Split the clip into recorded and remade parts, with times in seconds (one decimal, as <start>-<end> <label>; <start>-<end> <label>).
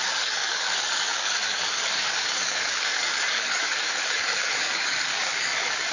0.0-5.9 remade